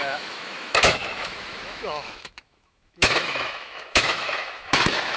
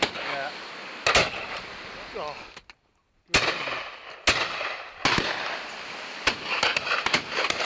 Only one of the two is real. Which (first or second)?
second